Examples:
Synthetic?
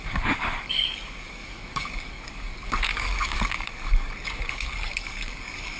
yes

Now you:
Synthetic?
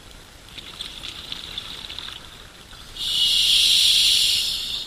yes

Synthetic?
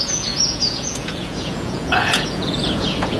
yes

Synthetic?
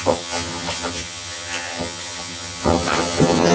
yes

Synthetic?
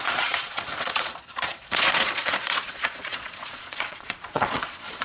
yes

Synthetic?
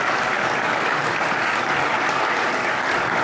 yes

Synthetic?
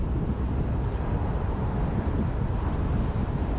no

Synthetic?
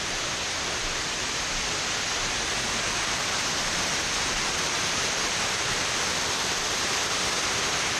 yes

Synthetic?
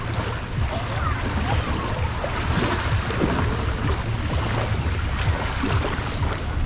no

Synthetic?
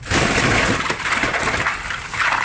no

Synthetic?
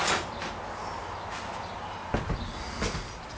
no